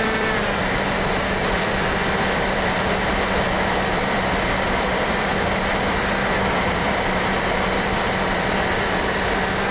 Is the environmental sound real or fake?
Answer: fake